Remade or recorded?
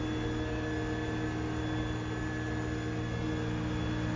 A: recorded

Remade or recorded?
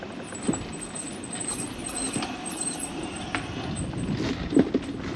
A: recorded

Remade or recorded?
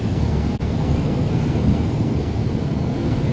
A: remade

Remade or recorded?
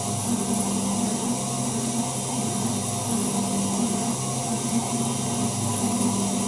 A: recorded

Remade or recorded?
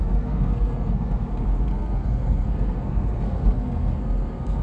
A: remade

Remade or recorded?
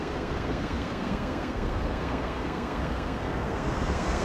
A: remade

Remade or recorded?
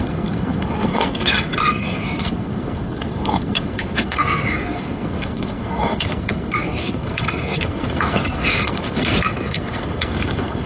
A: remade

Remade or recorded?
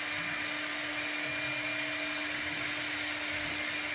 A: recorded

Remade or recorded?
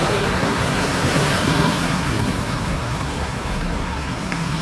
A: remade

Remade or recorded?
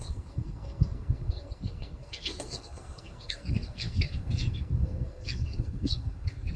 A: remade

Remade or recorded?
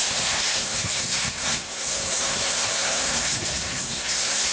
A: remade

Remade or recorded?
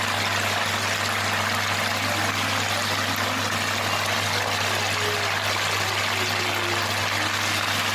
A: recorded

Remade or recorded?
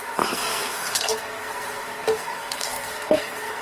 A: remade